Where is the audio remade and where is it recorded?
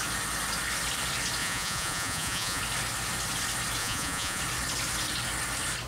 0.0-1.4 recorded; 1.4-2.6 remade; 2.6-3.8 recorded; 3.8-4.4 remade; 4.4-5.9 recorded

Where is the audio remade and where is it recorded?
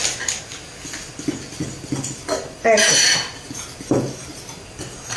0.0-5.2 recorded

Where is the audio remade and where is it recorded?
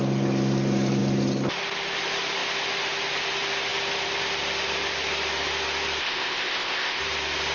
0.0-6.0 recorded; 6.0-7.0 remade; 7.0-7.5 recorded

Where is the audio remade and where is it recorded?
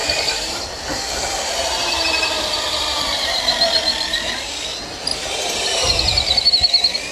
0.0-0.7 remade; 0.7-1.8 recorded; 1.8-4.5 remade; 4.5-5.1 recorded; 5.1-6.5 remade; 6.5-7.1 recorded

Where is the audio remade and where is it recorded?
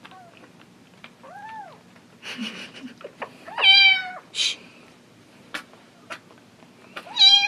0.0-2.4 recorded; 2.4-3.2 remade; 3.2-3.6 recorded; 3.6-6.1 remade; 6.1-7.5 recorded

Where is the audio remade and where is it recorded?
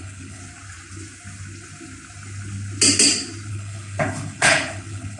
0.0-0.4 remade; 0.4-3.5 recorded; 3.5-5.2 remade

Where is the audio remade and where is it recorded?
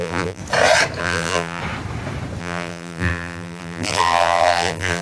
0.0-0.4 remade; 0.4-1.0 recorded; 1.0-1.6 remade; 1.6-2.4 recorded; 2.4-5.0 remade